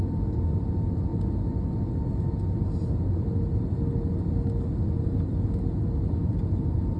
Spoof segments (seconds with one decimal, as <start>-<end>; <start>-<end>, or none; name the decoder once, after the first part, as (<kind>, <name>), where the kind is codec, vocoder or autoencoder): 6.2-7.0 (vocoder, BigVGAN v2)